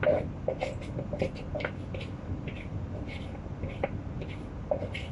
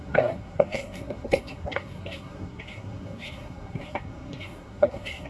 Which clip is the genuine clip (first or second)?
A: first